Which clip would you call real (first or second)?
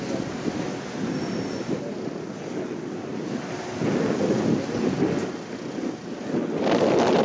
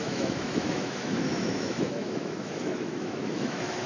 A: first